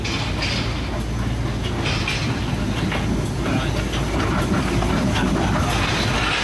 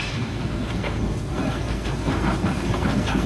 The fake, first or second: second